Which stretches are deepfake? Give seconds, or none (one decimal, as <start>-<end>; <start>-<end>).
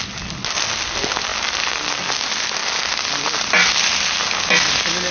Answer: none